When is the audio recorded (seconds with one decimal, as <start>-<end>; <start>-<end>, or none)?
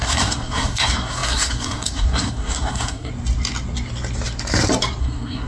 3.1-5.0